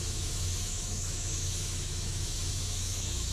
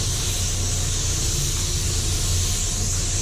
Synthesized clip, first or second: first